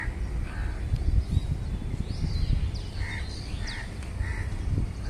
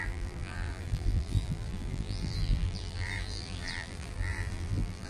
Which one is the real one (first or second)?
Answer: first